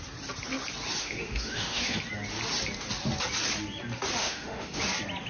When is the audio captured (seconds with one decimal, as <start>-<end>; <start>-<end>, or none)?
0.0-1.0; 2.0-4.2; 4.8-5.3